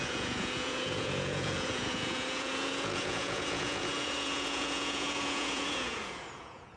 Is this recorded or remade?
remade